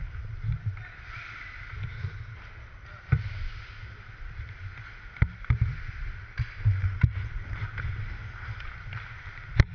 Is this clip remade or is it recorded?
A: recorded